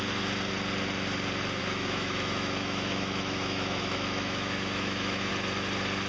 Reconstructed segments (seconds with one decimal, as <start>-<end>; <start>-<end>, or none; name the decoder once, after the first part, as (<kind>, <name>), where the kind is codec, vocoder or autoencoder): 1.6-5.3 (autoencoder, DAC-VAE)